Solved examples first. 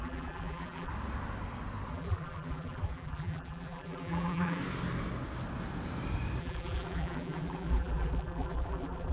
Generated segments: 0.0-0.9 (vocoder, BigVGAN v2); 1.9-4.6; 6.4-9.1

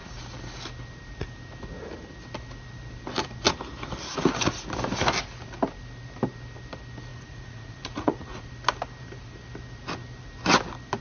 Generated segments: 7.1-8.5 (vocoder, Vocos)